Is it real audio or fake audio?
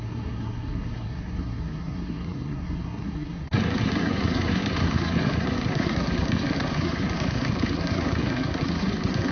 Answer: fake